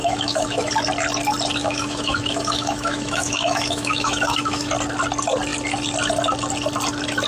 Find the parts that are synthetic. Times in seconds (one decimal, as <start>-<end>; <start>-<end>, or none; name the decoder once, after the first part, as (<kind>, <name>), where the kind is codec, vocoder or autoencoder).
0.0-0.7 (autoencoder, DAC-VAE); 1.6-4.7